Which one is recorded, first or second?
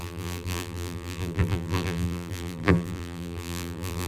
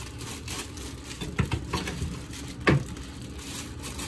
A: second